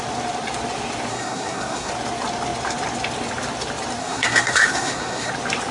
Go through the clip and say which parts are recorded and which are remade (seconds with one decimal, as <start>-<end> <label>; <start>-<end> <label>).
0.0-1.1 recorded; 1.1-1.9 remade; 1.9-4.0 recorded; 4.0-5.3 remade; 5.3-5.7 recorded